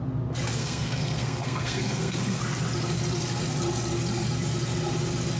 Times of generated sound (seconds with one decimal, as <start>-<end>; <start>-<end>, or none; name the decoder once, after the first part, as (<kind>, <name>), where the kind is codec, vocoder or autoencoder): 0.6-2.4 (codec, SNAC)